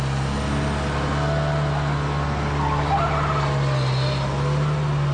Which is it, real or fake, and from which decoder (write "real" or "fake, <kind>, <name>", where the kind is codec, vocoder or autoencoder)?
real